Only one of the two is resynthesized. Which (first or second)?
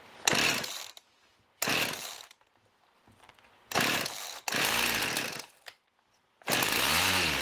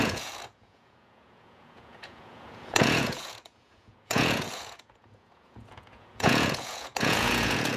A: second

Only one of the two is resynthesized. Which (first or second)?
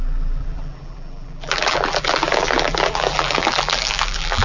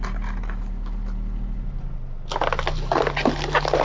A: first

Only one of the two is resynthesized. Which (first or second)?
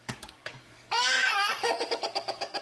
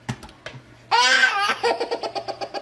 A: first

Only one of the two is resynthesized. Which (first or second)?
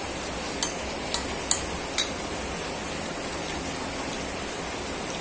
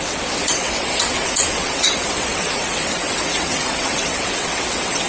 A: second